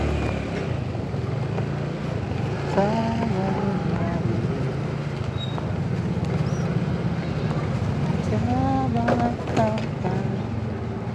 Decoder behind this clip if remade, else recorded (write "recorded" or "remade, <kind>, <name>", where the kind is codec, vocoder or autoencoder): recorded